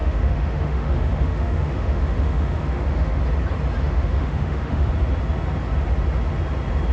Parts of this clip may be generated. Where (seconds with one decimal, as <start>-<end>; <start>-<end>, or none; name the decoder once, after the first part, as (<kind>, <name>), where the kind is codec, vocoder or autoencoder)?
0.0-3.2 (autoencoder, DAC-VAE); 3.8-4.9